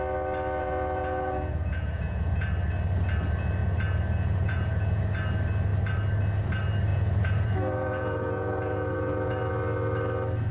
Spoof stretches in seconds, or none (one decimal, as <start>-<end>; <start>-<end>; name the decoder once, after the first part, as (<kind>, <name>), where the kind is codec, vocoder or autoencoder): 0.6-2.5 (vocoder, Vocos); 3.6-5.0; 6.9-9.4